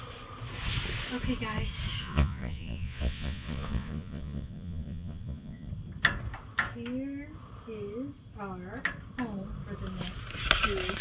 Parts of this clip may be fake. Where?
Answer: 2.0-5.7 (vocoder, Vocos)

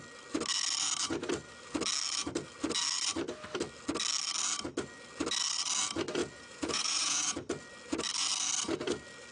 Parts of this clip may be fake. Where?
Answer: 6.2-7.3 (vocoder, Vocos)

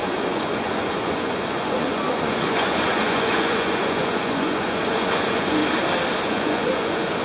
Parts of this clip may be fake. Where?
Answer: 0.0-5.6 (vocoder, Vocos); 6.2-7.2

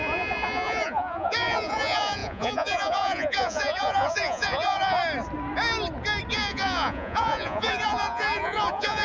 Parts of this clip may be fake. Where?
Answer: 0.0-5.0 (vocoder, Vocos); 6.3-9.0

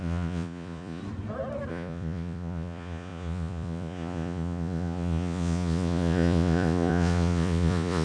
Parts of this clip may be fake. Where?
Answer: 0.0-1.0 (vocoder, Vocos); 1.7-8.0

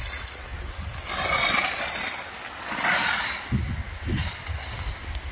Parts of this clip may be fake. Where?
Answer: none

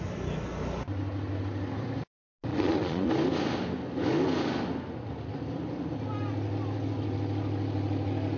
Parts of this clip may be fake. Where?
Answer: 2.5-3.1 (vocoder, Vocos)

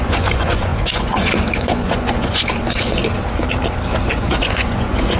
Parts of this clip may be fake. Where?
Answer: 0.0-3.0 (vocoder, Vocos); 4.1-5.2